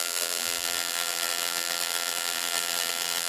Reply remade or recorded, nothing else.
remade